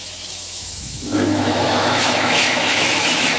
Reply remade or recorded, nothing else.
remade